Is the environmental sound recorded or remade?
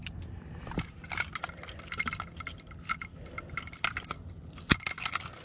recorded